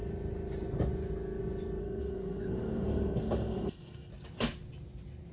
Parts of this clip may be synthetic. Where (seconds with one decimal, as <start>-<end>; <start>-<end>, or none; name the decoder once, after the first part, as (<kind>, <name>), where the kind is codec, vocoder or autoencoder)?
1.8-4.1 (codec, SNAC)